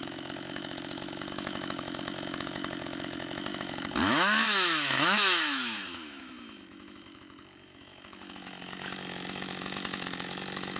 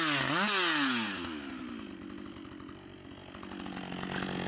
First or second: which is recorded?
second